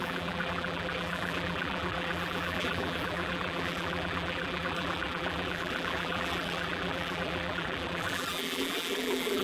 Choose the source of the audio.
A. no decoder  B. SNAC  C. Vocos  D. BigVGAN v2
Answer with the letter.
D